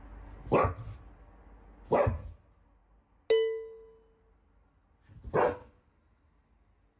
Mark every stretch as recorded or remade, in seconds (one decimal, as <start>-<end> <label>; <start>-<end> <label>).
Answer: 0.0-7.0 recorded